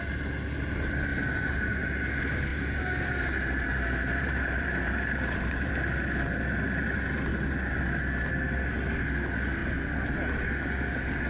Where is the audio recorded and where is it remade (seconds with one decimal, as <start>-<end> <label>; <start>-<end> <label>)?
0.0-1.1 recorded; 1.1-1.9 remade; 1.9-2.5 recorded; 2.5-5.7 remade; 5.7-11.3 recorded